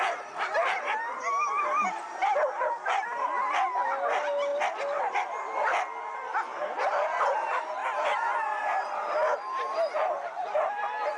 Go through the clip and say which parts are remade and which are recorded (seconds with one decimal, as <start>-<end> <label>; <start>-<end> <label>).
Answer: 0.0-11.2 recorded